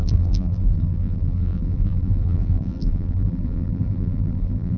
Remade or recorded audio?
remade